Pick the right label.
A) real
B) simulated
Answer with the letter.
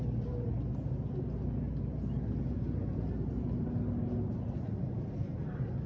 A